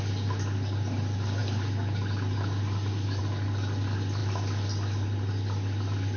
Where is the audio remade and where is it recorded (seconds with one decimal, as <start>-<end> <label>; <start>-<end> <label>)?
0.0-6.2 recorded